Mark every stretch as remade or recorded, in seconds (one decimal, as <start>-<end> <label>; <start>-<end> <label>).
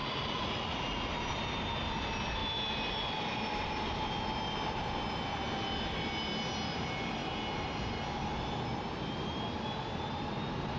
0.0-1.1 remade; 1.1-10.8 recorded